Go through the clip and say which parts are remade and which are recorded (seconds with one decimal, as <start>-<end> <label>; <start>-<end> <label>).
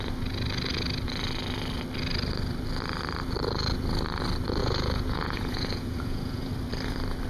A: 0.0-4.6 recorded; 4.6-6.5 remade; 6.5-7.3 recorded